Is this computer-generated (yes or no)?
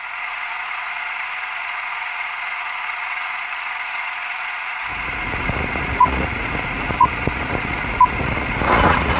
yes